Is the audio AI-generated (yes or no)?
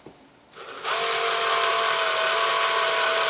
no